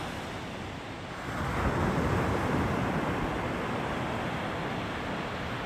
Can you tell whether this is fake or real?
real